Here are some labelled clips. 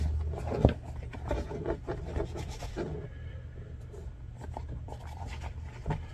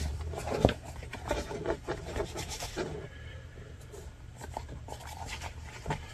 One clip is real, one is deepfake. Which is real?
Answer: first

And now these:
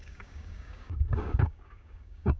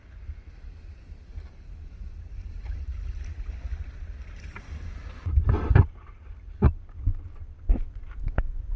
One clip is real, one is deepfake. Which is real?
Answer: second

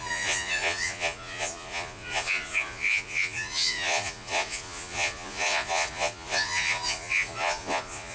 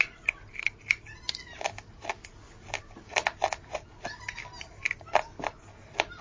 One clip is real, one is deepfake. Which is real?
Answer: second